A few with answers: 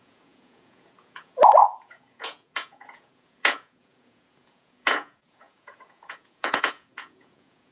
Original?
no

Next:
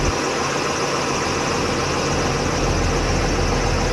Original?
yes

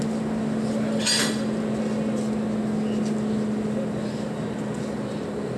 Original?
yes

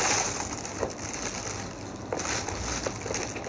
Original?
yes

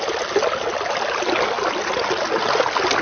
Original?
yes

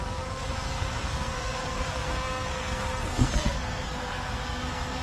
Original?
no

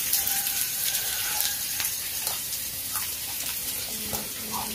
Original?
no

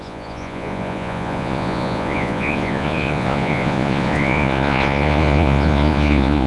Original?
no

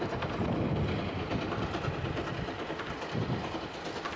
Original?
yes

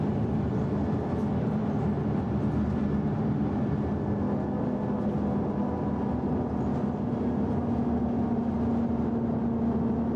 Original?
yes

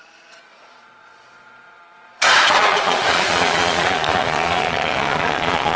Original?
no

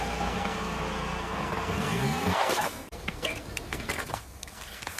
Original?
no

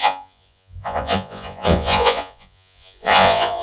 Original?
no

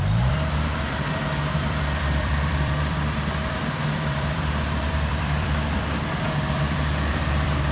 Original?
no